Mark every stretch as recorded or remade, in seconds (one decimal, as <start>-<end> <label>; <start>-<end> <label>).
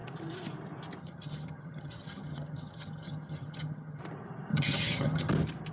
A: 0.0-1.0 recorded; 1.0-4.0 remade; 4.0-4.5 recorded; 4.5-5.3 remade; 5.3-5.7 recorded